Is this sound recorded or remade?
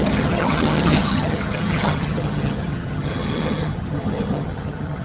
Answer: remade